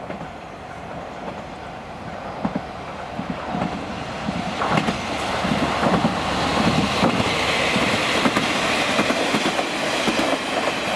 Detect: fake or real real